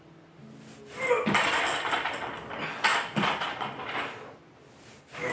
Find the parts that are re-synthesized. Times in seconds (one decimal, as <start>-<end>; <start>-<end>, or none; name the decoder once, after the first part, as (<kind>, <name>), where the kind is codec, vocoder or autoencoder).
none